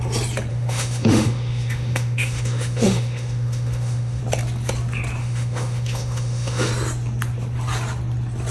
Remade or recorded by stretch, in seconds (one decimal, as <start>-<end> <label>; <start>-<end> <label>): 0.0-0.5 recorded; 0.5-4.2 remade; 4.2-5.2 recorded; 5.2-6.7 remade; 6.7-8.5 recorded